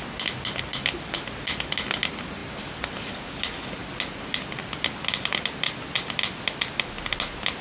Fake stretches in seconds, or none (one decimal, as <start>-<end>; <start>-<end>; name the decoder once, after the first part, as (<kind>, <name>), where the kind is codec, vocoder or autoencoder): none